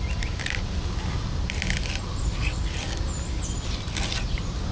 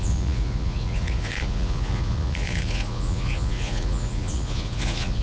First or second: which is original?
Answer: first